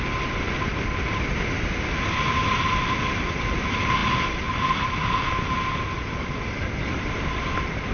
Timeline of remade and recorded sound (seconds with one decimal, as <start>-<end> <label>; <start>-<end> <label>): 0.0-7.9 recorded